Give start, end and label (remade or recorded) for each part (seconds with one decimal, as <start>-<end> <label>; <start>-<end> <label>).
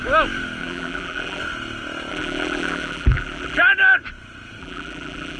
0.0-0.6 recorded; 0.6-1.4 remade; 1.4-2.1 recorded; 2.1-3.6 remade; 3.6-4.6 recorded; 4.6-5.4 remade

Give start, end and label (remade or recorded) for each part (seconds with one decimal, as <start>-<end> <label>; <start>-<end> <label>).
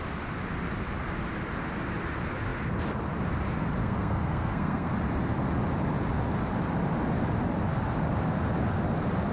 0.0-3.8 recorded; 3.8-4.9 remade; 4.9-9.3 recorded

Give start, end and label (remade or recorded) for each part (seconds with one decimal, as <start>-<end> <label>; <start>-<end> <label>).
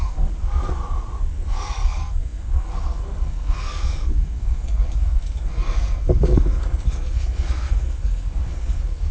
0.0-0.8 remade; 0.8-1.3 recorded; 1.3-9.1 remade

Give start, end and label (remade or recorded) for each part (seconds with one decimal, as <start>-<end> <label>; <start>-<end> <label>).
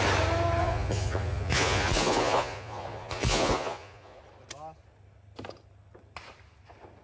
0.0-0.6 recorded; 0.6-4.2 remade; 4.2-7.0 recorded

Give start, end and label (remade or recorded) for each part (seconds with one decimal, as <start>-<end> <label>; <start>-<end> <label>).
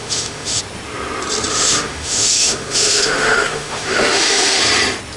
0.0-0.6 remade; 0.6-1.5 recorded; 1.5-4.6 remade; 4.6-5.2 recorded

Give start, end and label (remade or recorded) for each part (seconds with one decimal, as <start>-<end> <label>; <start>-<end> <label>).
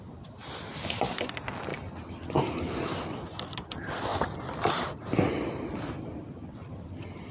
0.0-4.1 remade; 4.1-4.7 recorded; 4.7-7.3 remade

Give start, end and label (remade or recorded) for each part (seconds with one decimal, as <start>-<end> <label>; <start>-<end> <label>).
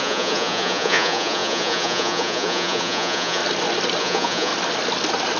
0.0-3.4 remade; 3.4-4.0 recorded; 4.0-4.5 remade; 4.5-5.4 recorded